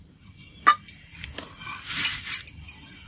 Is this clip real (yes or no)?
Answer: yes